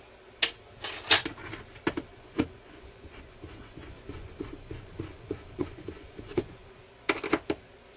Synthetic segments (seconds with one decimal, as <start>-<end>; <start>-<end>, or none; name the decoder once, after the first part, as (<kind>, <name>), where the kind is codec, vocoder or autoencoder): 2.1-6.8 (vocoder, Vocos)